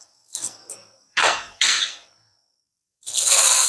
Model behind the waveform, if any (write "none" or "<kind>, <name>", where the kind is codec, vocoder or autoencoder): codec, SNAC